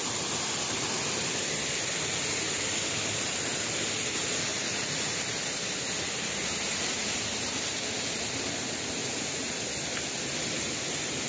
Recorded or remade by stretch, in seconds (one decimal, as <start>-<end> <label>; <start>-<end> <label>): 0.0-4.5 recorded; 4.5-5.2 remade; 5.2-9.0 recorded; 9.0-9.6 remade; 9.6-11.3 recorded